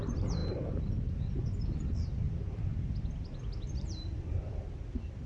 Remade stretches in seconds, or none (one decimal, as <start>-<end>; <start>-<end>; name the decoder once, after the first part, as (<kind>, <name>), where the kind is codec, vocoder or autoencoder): 0.0-5.3 (vocoder, BigVGAN v2)